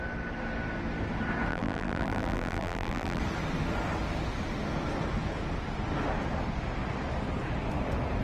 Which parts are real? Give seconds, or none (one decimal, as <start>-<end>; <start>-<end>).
0.0-1.5; 3.2-8.2